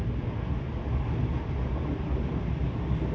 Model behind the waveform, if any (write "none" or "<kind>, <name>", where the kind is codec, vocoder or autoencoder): none